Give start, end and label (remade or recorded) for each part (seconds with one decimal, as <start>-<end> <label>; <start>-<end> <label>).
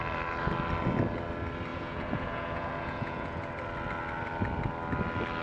0.0-1.7 recorded; 1.7-3.5 remade; 3.5-5.4 recorded